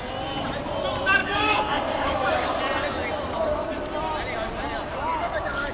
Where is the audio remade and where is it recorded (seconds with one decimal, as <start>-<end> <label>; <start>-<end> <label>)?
0.0-1.2 recorded; 1.2-2.6 remade; 2.6-5.1 recorded; 5.1-5.7 remade